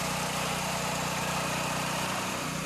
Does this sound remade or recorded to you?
remade